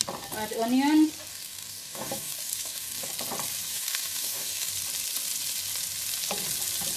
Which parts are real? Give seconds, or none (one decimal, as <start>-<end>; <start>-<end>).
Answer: 0.0-1.3; 3.1-3.7; 4.7-7.0